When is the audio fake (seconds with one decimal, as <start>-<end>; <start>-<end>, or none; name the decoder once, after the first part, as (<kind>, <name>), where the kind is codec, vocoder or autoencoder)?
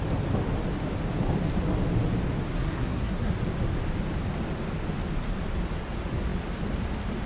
2.5-3.3 (codec, SNAC)